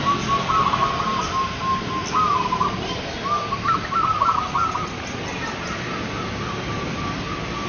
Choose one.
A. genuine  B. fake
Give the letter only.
A